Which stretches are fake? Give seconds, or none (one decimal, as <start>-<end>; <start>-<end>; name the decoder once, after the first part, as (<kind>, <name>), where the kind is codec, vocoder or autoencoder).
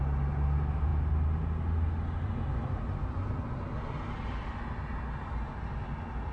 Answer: none